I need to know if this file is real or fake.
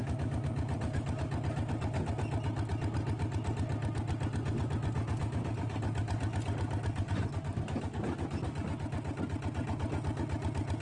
real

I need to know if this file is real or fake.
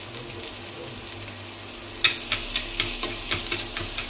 real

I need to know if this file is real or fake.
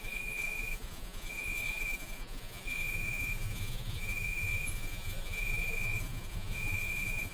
fake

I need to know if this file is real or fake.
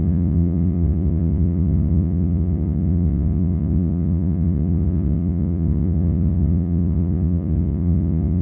fake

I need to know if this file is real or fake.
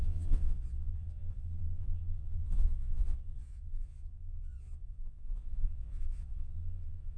fake